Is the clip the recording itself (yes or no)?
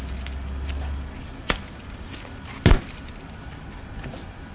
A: yes